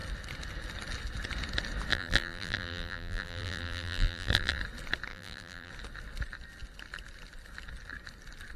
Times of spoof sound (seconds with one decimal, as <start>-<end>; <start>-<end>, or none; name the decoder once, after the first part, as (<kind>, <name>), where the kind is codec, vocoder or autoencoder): 1.9-4.6 (vocoder, BigVGAN v2); 5.1-5.7